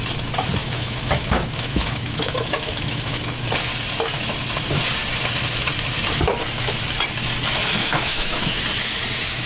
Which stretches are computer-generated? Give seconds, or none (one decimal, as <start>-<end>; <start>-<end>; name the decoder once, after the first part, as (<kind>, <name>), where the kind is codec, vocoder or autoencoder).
0.6-3.5 (autoencoder, DAC-VAE); 7.8-8.6